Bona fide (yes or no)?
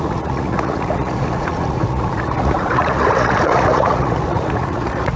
no